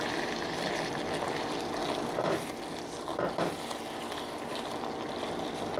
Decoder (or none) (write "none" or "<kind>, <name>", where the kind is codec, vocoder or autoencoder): none